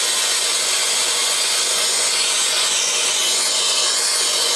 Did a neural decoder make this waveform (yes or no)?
yes